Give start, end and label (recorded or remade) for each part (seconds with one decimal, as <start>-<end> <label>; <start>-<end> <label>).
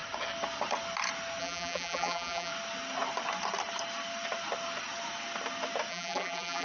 0.0-1.4 recorded; 1.4-2.5 remade; 2.5-5.9 recorded; 5.9-6.6 remade